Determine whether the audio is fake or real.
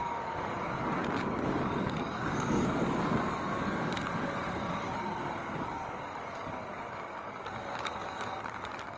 fake